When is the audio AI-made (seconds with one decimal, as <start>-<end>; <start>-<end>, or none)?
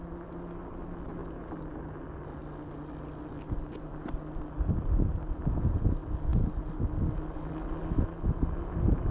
none